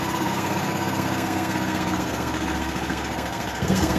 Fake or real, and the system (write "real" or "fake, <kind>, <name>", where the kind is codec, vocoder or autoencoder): fake, codec, SNAC